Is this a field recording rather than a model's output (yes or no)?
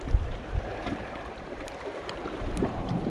no